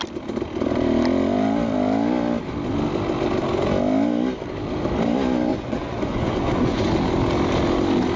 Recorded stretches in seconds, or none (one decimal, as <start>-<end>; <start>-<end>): 0.0-5.5; 6.9-8.2